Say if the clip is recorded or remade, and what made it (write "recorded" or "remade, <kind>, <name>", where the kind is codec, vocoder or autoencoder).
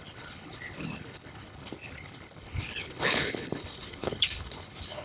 remade, codec, HILCodec